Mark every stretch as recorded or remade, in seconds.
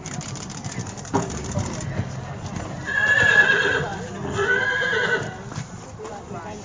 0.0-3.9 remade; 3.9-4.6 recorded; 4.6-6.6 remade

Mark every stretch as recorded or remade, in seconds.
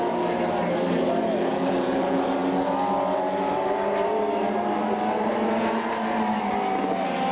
0.0-7.3 recorded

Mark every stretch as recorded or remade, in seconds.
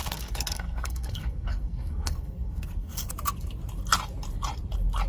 0.0-3.1 remade; 3.1-5.1 recorded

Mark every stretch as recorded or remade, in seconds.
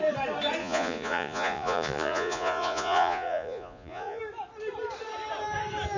0.0-0.6 recorded; 0.6-4.2 remade; 4.2-6.0 recorded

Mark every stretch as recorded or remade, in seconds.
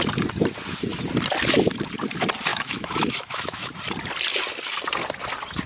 0.0-2.5 recorded; 2.5-3.7 remade; 3.7-5.7 recorded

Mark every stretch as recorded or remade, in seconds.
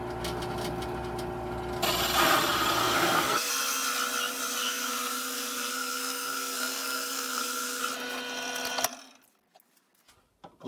0.0-2.8 recorded; 2.8-3.5 remade; 3.5-4.6 recorded; 4.6-7.8 remade; 7.8-10.7 recorded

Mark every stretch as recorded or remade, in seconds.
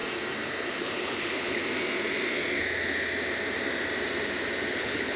0.0-0.7 recorded; 0.7-1.6 remade; 1.6-4.7 recorded; 4.7-5.2 remade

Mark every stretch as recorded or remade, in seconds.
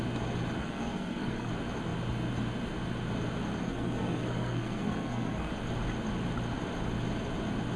0.0-0.6 recorded; 0.6-1.5 remade; 1.5-3.6 recorded; 3.6-5.5 remade; 5.5-7.8 recorded